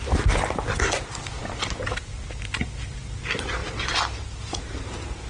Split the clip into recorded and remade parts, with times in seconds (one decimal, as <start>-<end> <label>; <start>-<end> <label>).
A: 0.0-5.3 recorded

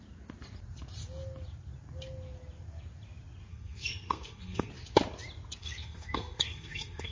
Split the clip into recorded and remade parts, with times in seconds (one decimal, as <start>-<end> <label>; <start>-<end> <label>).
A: 0.0-3.5 recorded; 3.5-4.7 remade; 4.7-5.6 recorded; 5.6-7.1 remade